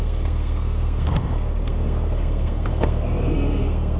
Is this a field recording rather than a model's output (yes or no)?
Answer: no